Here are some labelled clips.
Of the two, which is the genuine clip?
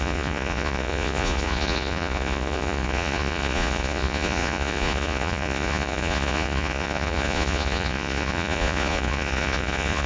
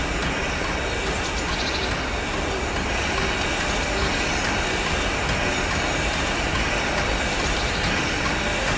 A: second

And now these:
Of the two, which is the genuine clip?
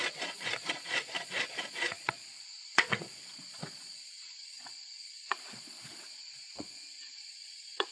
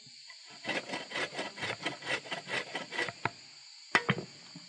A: second